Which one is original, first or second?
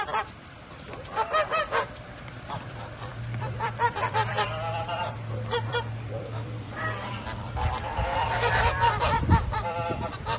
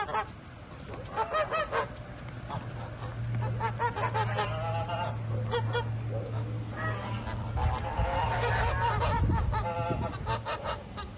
second